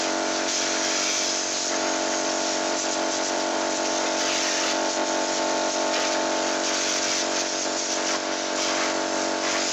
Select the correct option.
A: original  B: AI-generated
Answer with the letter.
B